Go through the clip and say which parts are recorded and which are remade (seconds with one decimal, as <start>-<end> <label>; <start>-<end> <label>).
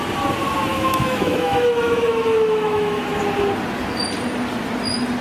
0.0-0.7 recorded; 0.7-3.2 remade; 3.2-5.2 recorded